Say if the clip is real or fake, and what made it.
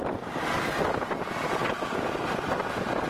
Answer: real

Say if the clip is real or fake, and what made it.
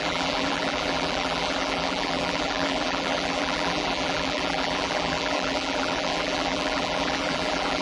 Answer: fake, vocoder, BigVGAN v2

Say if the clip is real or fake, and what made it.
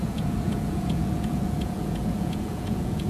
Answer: fake, vocoder, Vocos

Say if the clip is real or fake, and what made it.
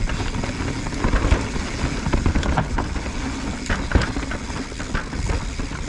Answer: real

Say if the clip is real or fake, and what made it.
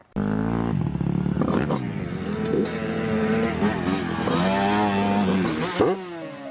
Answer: real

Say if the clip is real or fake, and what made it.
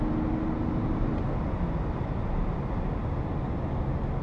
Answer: real